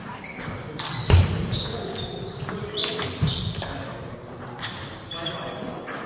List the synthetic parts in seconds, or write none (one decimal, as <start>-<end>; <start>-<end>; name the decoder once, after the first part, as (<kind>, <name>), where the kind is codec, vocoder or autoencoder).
0.0-1.4 (vocoder, BigVGAN v2); 2.0-6.1